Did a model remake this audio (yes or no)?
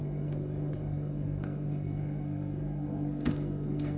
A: yes